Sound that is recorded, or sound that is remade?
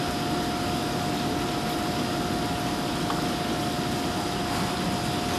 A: recorded